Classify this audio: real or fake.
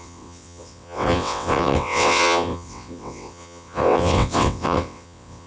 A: fake